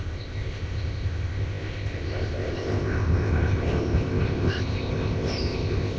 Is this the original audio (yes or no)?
no